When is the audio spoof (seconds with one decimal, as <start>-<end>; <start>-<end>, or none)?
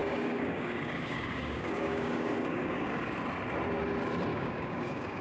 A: 0.0-3.1; 4.3-5.2